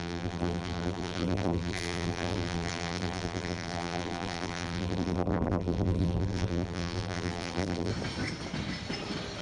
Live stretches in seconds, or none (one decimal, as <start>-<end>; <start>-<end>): 7.9-9.4